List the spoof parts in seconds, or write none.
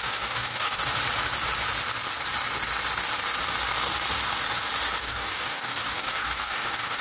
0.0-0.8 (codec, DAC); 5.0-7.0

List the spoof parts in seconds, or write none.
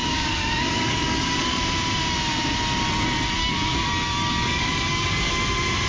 0.0-1.6 (codec, DAC); 3.4-5.3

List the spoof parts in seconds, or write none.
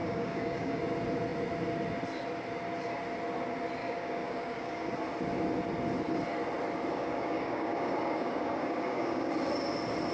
0.0-0.8 (codec, DAC); 3.8-4.9; 6.9-9.3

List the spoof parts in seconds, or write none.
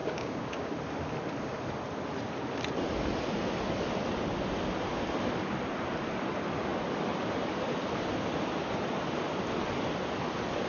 0.0-0.7 (codec, DAC)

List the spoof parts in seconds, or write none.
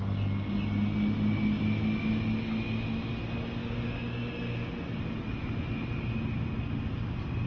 3.6-4.7 (codec, DAC)